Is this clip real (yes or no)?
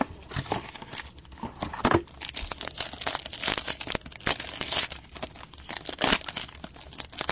yes